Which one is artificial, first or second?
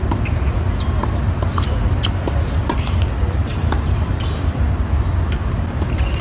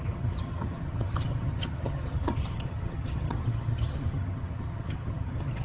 second